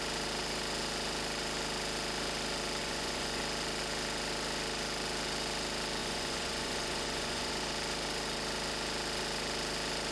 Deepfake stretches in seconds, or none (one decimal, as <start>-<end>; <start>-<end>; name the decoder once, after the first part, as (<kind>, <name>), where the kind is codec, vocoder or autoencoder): 2.8-3.4 (vocoder, Vocos); 6.0-7.5